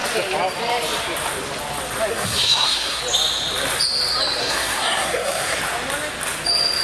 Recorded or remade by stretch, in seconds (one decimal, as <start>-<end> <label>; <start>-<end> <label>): 0.0-2.1 recorded; 2.1-3.0 remade; 3.0-4.4 recorded; 4.4-5.6 remade; 5.6-6.8 recorded